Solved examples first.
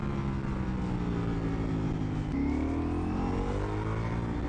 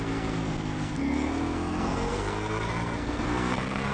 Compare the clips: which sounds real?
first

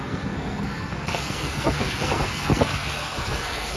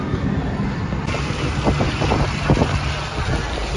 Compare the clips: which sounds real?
second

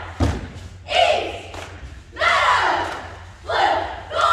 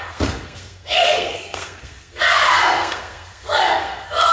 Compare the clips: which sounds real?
first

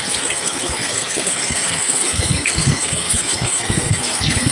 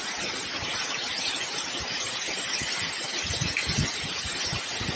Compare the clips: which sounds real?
second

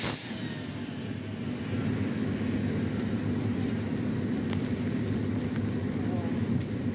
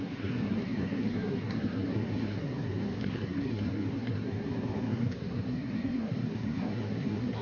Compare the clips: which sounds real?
first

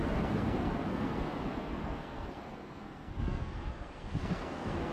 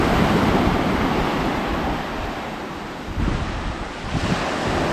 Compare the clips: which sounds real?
second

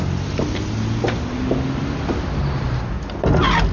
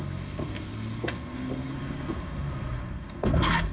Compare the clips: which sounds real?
first